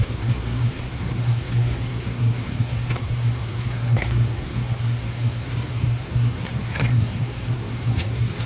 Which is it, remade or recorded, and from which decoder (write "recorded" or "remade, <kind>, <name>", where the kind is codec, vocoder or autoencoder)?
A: remade, codec, SNAC